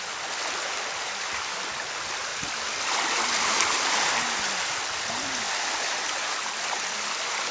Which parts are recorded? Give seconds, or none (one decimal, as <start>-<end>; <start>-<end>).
0.0-7.5